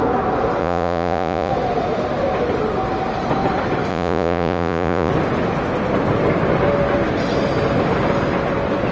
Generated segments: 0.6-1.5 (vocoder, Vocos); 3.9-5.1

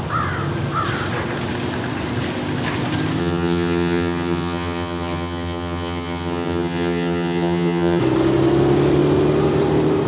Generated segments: 3.2-8.0 (vocoder, HiFi-GAN)

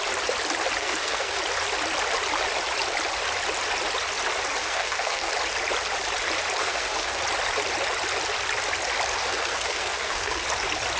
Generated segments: 0.8-1.4 (codec, SNAC); 4.6-5.3; 6.6-7.2; 9.2-10.4

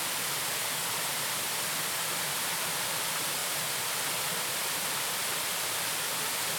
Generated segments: none

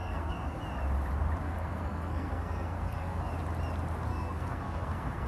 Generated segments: 0.0-0.6 (codec, SNAC); 1.4-3.3; 4.1-5.3